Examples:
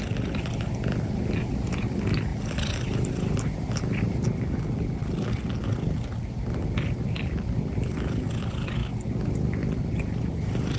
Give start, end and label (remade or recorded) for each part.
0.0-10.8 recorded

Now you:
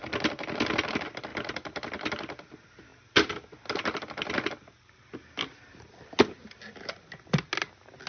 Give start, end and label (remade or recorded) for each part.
0.0-1.3 recorded; 1.3-2.5 remade; 2.5-8.1 recorded

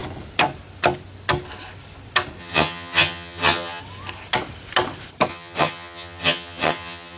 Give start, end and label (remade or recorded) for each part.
0.0-2.4 recorded; 2.4-3.8 remade; 3.8-5.3 recorded; 5.3-7.2 remade

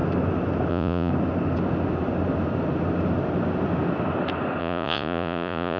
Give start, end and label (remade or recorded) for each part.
0.0-0.7 recorded; 0.7-1.1 remade; 1.1-4.6 recorded; 4.6-5.8 remade